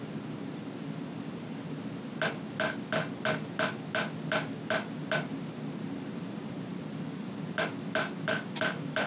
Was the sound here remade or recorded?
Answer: recorded